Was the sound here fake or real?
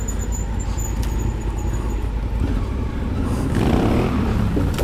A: real